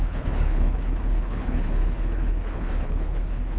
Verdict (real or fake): fake